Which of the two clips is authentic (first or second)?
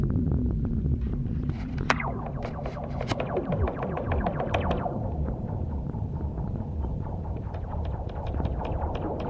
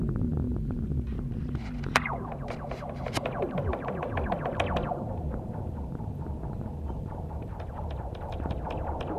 second